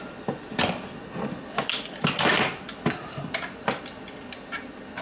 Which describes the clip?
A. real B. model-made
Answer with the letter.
A